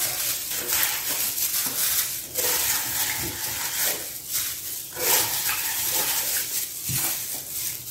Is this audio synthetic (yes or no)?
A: no